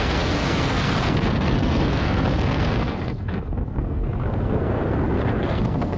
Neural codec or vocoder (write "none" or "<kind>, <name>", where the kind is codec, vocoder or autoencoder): codec, SNAC